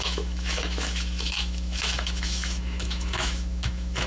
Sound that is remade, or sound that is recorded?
remade